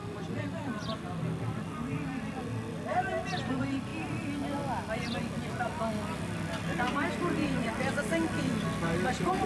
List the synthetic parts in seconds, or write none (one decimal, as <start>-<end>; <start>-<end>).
none